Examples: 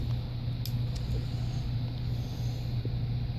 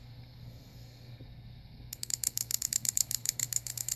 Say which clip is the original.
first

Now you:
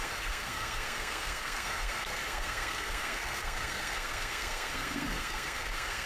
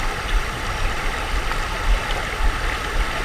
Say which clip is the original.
second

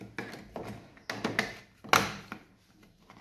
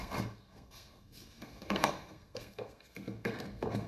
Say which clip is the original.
first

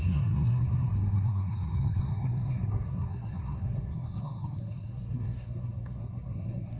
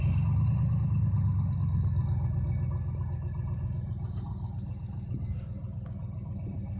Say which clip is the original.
second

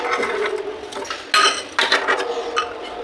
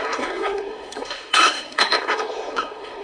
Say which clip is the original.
first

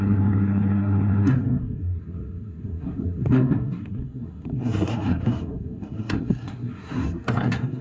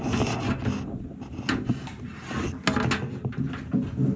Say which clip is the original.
second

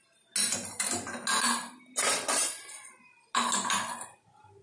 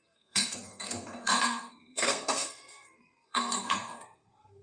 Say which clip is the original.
first